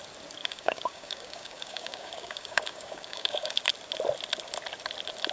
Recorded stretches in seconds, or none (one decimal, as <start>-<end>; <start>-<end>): 0.0-0.4; 3.6-5.3